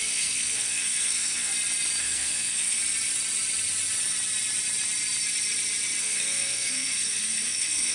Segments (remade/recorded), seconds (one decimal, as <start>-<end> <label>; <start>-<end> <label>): 0.0-1.5 remade; 1.5-2.0 recorded; 2.0-2.8 remade; 2.8-6.0 recorded; 6.0-7.9 remade